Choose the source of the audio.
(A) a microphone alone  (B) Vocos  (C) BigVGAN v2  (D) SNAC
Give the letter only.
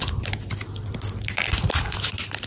A